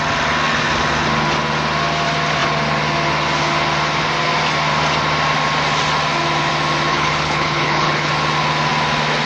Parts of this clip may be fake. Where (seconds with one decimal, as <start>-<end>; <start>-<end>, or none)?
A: 6.9-8.1